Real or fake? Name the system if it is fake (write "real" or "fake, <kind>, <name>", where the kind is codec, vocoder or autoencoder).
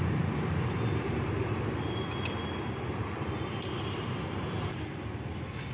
real